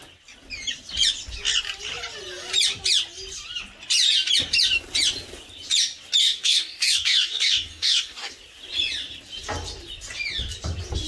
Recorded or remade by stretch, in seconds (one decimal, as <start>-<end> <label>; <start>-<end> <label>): 0.0-6.2 recorded; 6.2-8.3 remade; 8.3-11.1 recorded